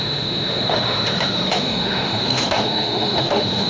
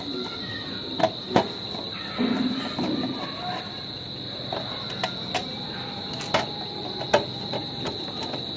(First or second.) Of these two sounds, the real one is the second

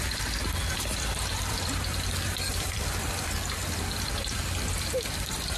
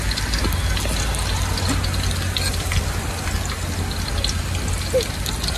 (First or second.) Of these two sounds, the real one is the second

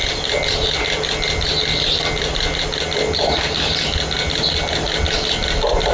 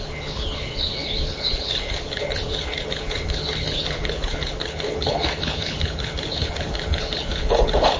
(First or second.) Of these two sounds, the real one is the first